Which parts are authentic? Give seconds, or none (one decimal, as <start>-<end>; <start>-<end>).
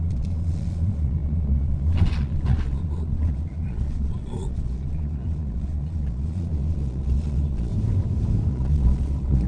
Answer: 7.7-8.5